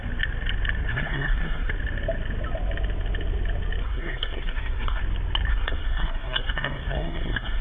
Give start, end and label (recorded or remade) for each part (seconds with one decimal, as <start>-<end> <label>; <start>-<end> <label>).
0.0-0.9 recorded; 0.9-1.7 remade; 1.7-3.8 recorded; 3.8-5.0 remade; 5.0-5.5 recorded; 5.5-7.6 remade